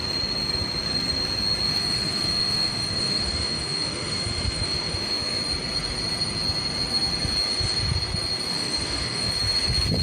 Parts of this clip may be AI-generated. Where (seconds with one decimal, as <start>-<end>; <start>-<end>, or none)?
1.7-5.4; 8.5-9.3